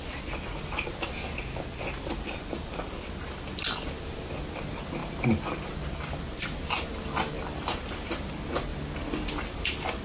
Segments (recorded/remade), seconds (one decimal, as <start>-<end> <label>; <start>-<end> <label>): 0.0-5.0 recorded; 5.0-8.1 remade; 8.1-8.7 recorded; 8.7-9.6 remade; 9.6-10.0 recorded